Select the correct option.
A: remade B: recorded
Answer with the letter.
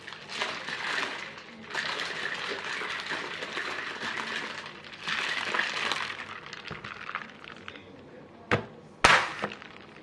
B